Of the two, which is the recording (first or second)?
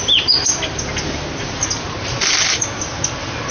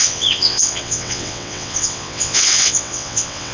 first